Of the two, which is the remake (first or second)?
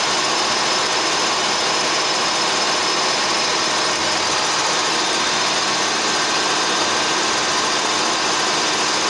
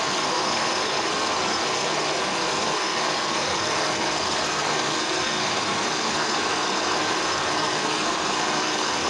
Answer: second